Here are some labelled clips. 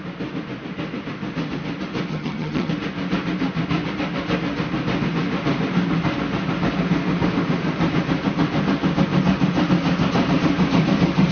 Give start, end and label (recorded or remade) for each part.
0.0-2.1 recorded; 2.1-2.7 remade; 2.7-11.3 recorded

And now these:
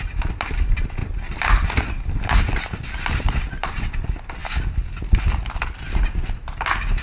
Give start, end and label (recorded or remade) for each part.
0.0-7.0 recorded